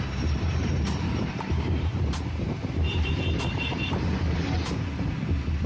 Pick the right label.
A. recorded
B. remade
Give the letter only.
B